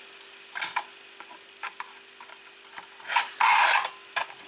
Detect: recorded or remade recorded